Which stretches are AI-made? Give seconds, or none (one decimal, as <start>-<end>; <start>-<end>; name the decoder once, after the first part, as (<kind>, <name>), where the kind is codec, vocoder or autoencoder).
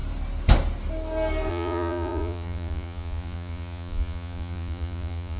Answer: 1.5-5.4 (vocoder, Vocos)